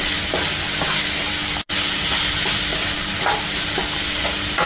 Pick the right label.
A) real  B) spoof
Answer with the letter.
A